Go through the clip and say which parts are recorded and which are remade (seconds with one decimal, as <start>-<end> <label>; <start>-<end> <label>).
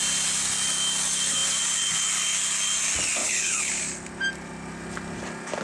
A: 0.0-3.2 recorded; 3.2-3.7 remade; 3.7-5.6 recorded